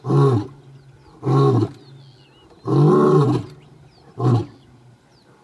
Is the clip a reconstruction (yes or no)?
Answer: no